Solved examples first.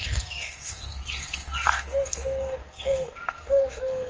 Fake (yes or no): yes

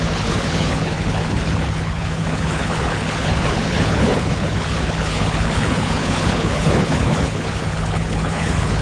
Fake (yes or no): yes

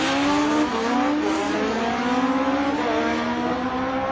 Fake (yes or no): no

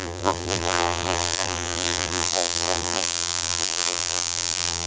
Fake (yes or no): yes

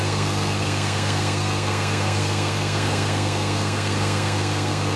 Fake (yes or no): yes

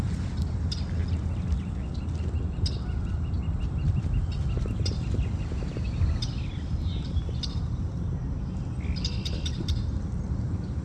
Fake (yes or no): no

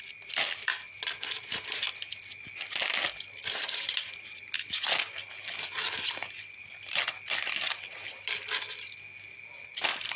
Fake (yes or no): no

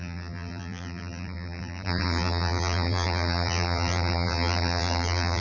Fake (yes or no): yes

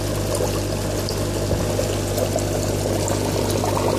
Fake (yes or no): no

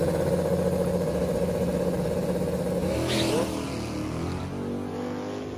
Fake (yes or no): no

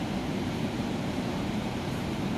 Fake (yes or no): yes